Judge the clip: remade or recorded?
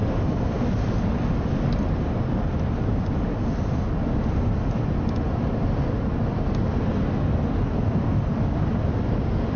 recorded